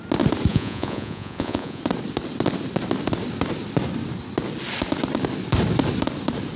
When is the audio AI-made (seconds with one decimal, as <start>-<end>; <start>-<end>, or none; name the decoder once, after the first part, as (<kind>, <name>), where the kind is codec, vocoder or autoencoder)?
0.5-1.8 (vocoder, Vocos)